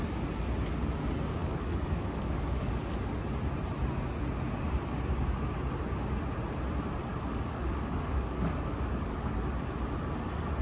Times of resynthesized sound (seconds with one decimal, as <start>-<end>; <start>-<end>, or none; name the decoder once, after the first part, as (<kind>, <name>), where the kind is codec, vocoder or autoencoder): 1.4-2.8 (codec, DAC); 7.0-9.4